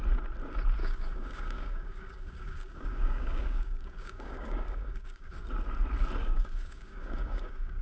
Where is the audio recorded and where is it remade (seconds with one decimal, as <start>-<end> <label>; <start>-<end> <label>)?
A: 0.0-0.8 recorded; 0.8-5.4 remade; 5.4-6.2 recorded; 6.2-7.8 remade